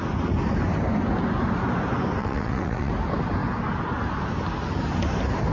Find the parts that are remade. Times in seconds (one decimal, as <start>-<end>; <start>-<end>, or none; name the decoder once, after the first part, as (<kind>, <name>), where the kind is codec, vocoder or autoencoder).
2.2-2.9 (vocoder, WaveNeXt)